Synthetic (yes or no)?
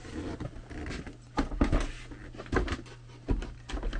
no